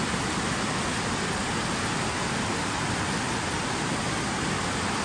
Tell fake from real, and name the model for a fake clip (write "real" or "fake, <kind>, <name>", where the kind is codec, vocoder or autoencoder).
real